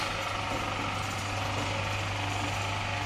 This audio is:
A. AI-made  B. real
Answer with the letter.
B